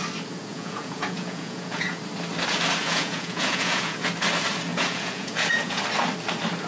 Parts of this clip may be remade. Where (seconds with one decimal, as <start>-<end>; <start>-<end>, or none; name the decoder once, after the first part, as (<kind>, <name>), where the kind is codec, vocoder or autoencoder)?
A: 0.5-2.0 (vocoder, Vocos); 2.8-4.1; 4.7-5.8